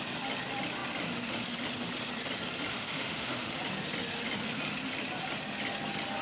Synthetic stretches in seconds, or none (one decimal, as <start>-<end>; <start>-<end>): 2.7-3.6